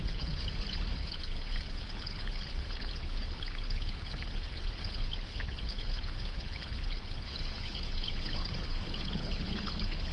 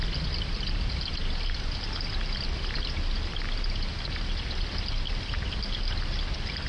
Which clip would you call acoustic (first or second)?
second